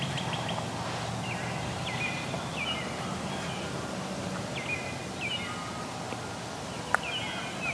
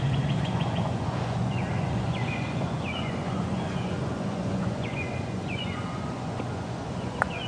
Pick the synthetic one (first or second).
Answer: second